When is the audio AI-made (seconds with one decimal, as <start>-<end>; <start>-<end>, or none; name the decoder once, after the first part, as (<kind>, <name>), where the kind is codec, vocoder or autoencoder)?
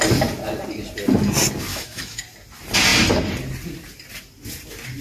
1.7-2.2 (autoencoder, DAC-VAE)